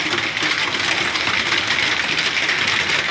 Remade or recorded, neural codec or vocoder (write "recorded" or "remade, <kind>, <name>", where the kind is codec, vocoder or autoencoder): recorded